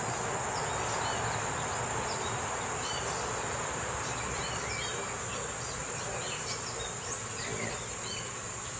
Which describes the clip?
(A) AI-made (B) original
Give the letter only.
B